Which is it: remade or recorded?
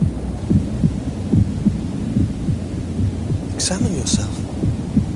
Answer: recorded